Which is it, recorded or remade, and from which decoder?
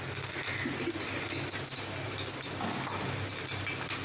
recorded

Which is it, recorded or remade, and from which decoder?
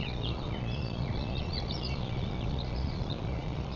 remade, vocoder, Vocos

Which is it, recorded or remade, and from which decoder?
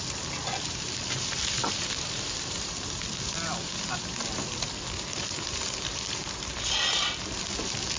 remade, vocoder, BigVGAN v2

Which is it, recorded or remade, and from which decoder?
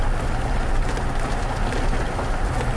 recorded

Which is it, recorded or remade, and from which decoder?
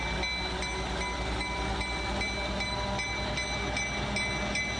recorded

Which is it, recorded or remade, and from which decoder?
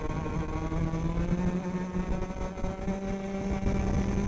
recorded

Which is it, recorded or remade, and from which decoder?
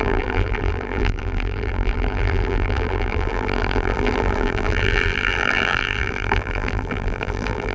remade, vocoder, BigVGAN v2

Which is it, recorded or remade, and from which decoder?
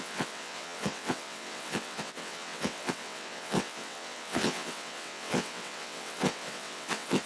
remade, vocoder, WaveNeXt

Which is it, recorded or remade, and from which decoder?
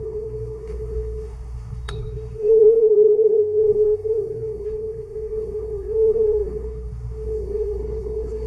remade, codec, SNAC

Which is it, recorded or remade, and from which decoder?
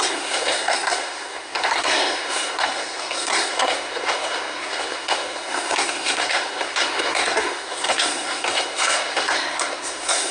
remade, codec, SNAC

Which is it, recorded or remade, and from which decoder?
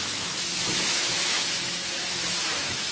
remade, autoencoder, DAC-VAE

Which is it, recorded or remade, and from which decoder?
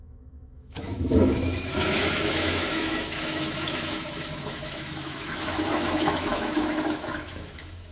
remade, autoencoder, DAC-VAE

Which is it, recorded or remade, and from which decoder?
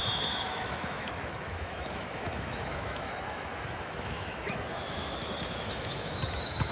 remade, autoencoder, DAC-VAE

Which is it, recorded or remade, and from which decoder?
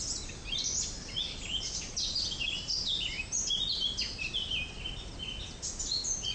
recorded